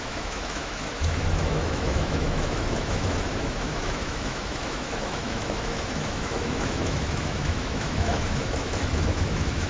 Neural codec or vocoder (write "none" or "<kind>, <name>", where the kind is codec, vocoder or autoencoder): autoencoder, DAC-VAE